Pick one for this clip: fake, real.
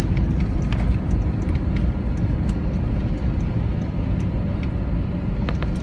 real